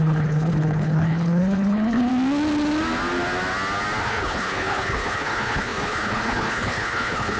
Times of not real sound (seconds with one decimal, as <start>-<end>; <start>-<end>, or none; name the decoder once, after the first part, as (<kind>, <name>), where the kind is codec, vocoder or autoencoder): 0.0-2.1 (codec, HILCodec); 4.0-7.4